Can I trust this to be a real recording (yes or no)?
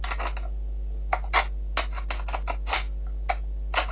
yes